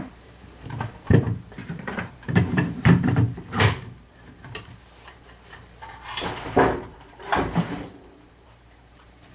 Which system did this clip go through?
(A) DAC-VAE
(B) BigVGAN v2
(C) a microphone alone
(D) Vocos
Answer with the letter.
B